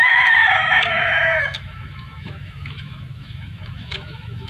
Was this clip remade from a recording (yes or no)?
yes